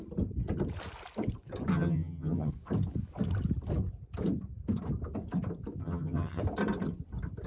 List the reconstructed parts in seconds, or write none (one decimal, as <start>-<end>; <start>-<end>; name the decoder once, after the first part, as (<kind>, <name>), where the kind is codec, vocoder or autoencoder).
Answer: 1.7-2.5 (vocoder, HiFi-GAN); 5.8-6.4